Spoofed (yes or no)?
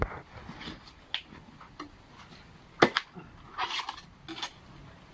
no